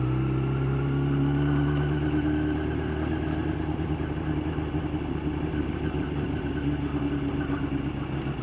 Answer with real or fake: real